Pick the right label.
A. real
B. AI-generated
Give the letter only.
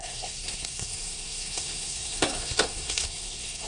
B